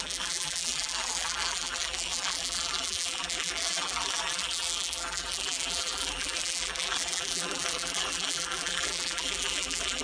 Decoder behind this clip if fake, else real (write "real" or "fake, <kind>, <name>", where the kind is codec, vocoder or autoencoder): fake, vocoder, BigVGAN v2